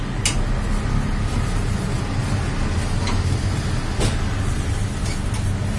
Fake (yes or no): no